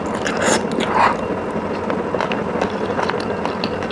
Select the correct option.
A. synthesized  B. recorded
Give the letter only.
B